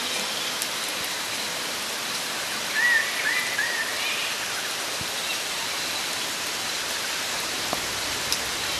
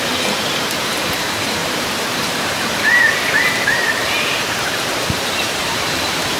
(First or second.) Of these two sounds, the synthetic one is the second